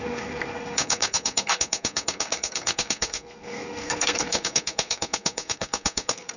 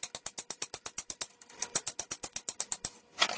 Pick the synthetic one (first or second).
first